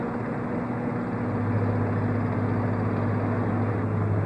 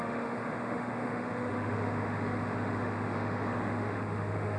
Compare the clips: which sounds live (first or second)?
first